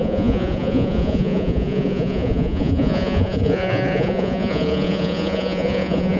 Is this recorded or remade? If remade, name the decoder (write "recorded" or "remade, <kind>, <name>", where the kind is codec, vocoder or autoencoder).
remade, vocoder, Vocos